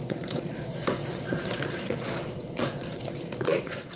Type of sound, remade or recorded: remade